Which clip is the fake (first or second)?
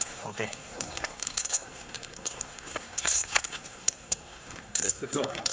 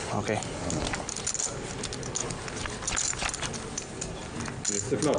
first